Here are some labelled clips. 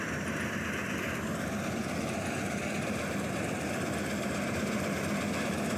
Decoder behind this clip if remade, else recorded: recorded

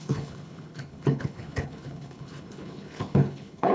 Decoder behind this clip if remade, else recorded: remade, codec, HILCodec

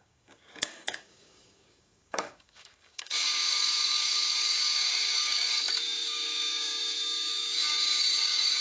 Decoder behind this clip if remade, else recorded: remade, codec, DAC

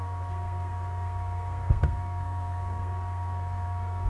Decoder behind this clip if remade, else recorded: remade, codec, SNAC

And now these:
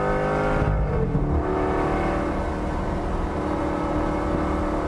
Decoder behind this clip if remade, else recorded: recorded